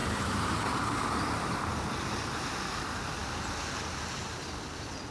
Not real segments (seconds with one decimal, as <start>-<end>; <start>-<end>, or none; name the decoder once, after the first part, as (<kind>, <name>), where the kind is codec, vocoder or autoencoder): 0.0-1.7 (vocoder, BigVGAN v2)